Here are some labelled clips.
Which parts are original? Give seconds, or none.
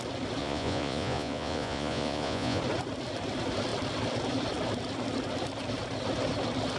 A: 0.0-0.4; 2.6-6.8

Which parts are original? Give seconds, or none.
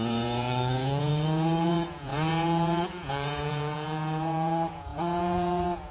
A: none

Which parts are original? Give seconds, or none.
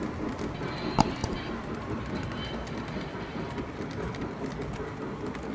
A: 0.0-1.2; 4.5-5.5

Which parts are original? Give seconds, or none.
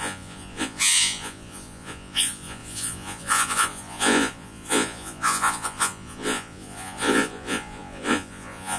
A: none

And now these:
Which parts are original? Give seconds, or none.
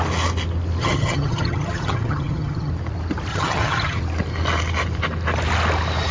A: 0.0-0.8; 2.7-3.3; 4.0-6.1